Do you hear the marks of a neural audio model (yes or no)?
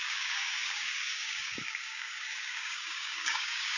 yes